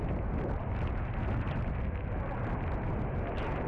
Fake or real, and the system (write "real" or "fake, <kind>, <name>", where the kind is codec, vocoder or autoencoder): real